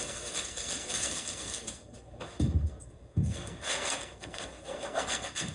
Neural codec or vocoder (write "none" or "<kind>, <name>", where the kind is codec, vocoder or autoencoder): codec, SNAC